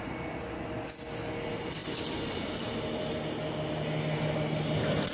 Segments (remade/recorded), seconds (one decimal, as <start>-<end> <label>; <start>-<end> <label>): 0.0-5.1 recorded